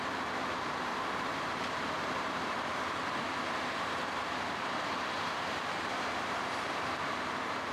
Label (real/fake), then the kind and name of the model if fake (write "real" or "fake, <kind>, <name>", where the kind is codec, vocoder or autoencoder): fake, vocoder, BigVGAN v2